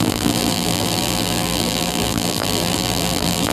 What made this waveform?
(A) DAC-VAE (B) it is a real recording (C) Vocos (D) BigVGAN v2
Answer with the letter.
D